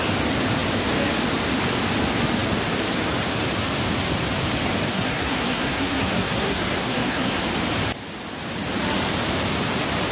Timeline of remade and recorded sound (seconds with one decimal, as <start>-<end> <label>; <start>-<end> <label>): 0.0-4.9 recorded; 4.9-7.4 remade; 7.4-10.1 recorded